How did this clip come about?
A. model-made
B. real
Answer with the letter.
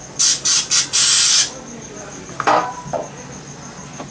B